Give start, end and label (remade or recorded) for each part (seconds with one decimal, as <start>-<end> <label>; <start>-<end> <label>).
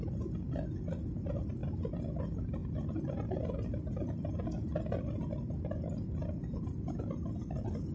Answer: 0.0-7.9 recorded